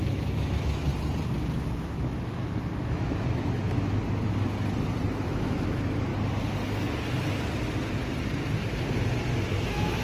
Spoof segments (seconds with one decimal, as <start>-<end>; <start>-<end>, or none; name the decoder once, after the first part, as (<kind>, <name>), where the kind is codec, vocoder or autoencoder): 0.0-0.9 (autoencoder, DAC-VAE); 1.7-4.0; 5.1-6.1; 9.5-10.0